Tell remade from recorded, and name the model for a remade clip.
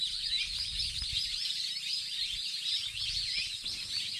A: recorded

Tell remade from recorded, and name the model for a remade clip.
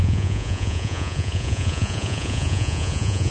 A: remade, vocoder, Vocos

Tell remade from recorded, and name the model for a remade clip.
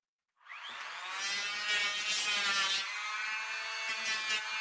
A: recorded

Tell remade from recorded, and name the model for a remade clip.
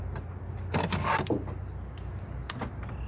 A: recorded